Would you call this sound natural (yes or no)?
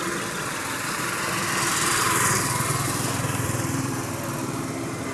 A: no